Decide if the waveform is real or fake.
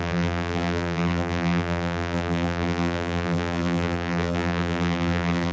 fake